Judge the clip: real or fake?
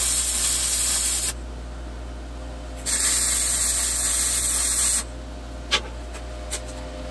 real